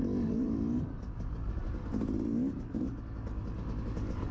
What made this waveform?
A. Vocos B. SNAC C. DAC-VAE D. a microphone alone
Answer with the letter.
D